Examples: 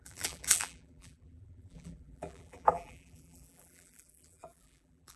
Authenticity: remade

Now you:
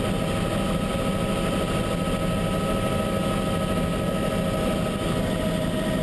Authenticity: recorded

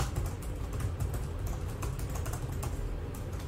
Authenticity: recorded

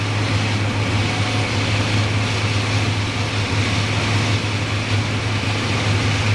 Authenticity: recorded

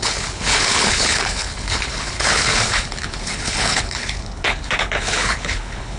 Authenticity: remade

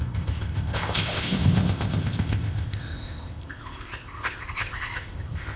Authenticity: remade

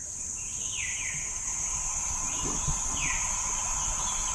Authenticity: recorded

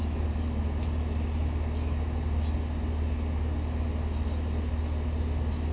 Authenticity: recorded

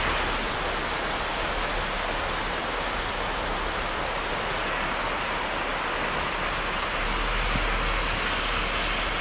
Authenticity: recorded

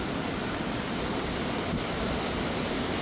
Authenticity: recorded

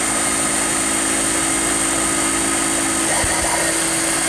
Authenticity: recorded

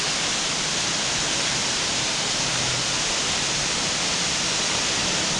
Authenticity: recorded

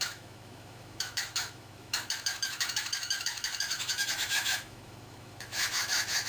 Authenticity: remade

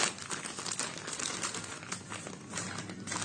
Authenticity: recorded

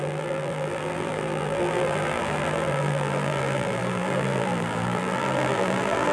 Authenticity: remade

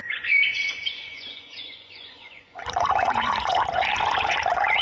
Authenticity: remade